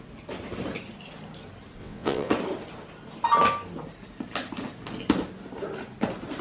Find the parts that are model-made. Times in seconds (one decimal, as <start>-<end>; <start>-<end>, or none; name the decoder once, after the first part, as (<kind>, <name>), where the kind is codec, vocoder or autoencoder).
1.8-2.3 (vocoder, WaveNeXt)

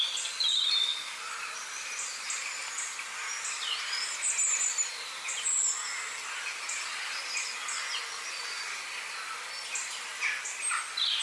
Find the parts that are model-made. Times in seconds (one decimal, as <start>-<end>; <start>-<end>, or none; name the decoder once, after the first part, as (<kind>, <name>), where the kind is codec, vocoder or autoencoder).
none